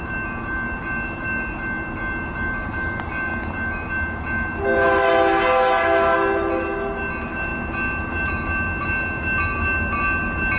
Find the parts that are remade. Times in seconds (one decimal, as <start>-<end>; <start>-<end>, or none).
none